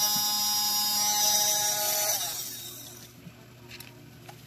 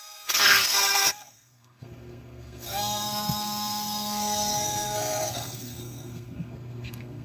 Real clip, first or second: first